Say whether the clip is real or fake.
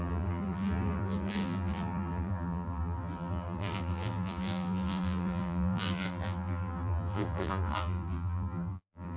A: fake